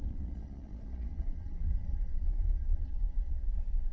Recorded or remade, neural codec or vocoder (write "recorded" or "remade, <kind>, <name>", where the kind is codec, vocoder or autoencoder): remade, vocoder, Vocos